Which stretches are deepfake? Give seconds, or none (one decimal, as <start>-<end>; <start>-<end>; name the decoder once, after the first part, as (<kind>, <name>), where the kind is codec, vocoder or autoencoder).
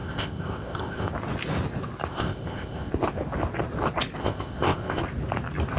0.0-1.1 (codec, ZipCodec); 2.1-2.9; 4.2-5.0